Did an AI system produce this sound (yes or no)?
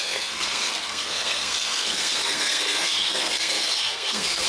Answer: yes